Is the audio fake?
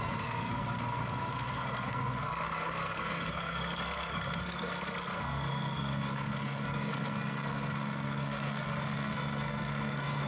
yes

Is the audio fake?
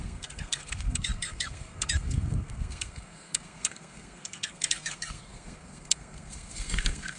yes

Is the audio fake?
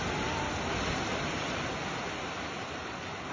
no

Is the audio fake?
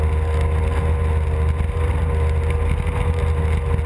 no